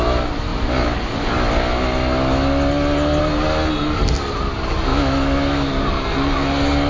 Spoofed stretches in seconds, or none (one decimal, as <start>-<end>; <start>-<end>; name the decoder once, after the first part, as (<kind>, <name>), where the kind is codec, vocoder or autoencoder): 4.9-5.7 (autoencoder, DAC-VAE)